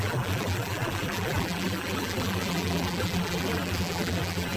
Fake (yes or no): yes